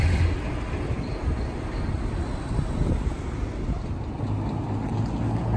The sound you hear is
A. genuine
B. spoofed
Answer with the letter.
A